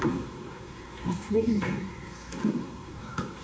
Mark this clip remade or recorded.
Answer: remade